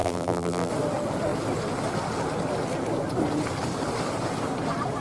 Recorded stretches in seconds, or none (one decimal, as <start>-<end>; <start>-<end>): 0.7-5.0